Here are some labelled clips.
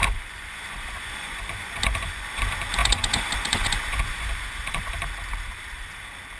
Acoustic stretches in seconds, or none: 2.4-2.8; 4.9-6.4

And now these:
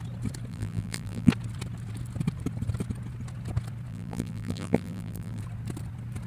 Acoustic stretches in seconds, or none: 0.0-0.5; 1.3-3.9; 5.4-6.3

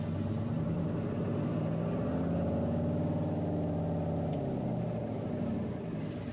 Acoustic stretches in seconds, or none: 0.0-6.3

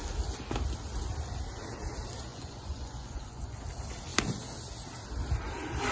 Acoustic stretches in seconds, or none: 0.0-2.3; 3.6-5.9

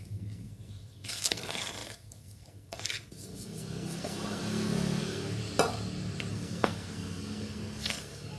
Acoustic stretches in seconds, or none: 5.4-6.3